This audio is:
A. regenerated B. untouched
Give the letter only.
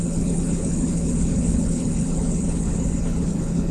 A